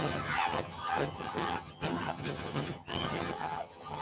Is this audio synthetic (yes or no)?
yes